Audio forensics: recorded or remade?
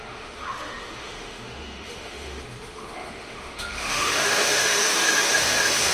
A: remade